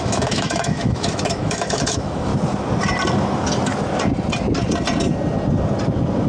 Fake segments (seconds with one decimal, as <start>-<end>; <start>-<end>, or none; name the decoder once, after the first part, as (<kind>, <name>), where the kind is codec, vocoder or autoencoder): 0.0-2.3 (autoencoder, DAC-VAE)